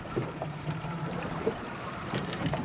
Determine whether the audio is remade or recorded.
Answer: remade